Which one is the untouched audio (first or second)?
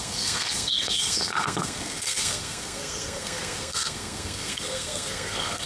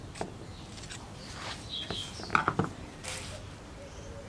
second